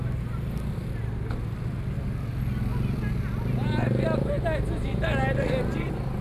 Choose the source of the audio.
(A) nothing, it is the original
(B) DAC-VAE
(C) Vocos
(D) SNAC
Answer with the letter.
A